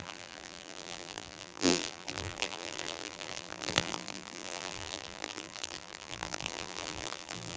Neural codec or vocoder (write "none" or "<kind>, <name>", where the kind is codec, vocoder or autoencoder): vocoder, BigVGAN v2